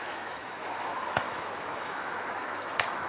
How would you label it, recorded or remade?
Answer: remade